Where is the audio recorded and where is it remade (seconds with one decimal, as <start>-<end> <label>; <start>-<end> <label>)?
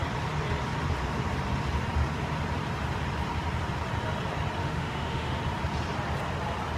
0.0-4.6 recorded; 4.6-5.4 remade; 5.4-6.8 recorded